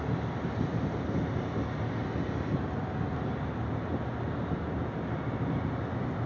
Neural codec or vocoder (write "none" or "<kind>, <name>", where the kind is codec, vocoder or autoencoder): none